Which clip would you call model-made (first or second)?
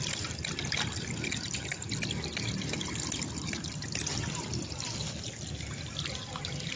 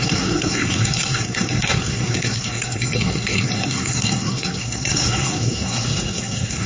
second